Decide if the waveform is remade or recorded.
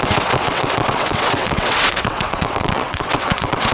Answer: remade